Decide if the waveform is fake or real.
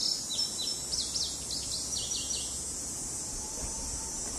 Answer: real